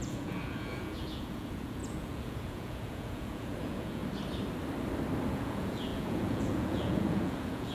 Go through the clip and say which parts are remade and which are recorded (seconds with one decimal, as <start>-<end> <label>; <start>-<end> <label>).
0.0-4.0 remade; 4.0-5.3 recorded; 5.3-7.7 remade